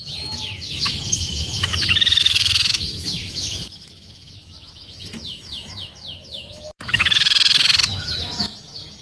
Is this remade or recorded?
remade